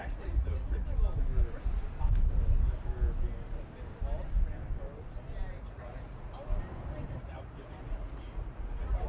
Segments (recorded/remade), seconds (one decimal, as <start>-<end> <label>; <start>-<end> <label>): 0.0-0.8 remade; 0.8-5.6 recorded; 5.6-6.5 remade; 6.5-7.2 recorded; 7.2-9.1 remade